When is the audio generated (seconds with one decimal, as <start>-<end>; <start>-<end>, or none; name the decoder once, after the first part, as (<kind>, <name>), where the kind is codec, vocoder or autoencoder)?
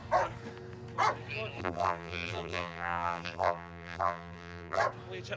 1.6-4.8 (vocoder, BigVGAN v2)